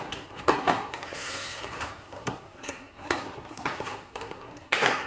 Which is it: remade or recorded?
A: remade